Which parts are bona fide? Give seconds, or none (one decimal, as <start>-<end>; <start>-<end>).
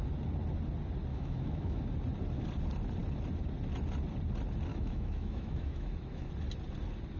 0.0-1.1; 1.8-4.7; 6.3-7.2